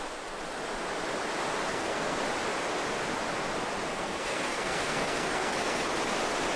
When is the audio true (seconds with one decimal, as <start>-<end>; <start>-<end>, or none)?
0.0-1.7; 2.2-3.9; 5.9-6.6